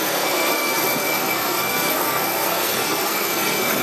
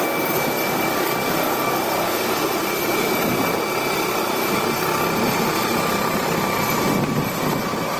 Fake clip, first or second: first